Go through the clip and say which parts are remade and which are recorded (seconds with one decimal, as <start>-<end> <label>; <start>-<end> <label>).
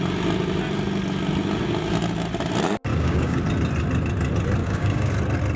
0.0-2.9 recorded; 2.9-3.4 remade; 3.4-4.6 recorded; 4.6-5.1 remade; 5.1-5.6 recorded